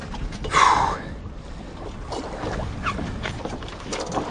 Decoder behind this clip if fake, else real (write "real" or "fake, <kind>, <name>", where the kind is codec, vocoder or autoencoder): real